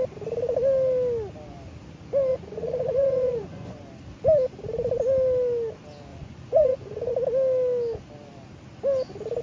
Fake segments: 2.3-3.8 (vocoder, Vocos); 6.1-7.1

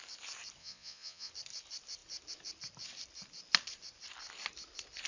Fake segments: 0.6-1.3 (vocoder, Vocos)

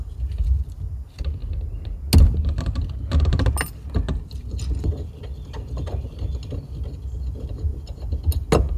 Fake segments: none